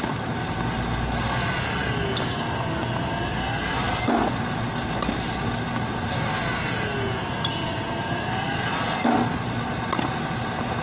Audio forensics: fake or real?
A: real